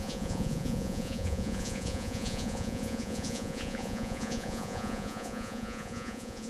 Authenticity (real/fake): fake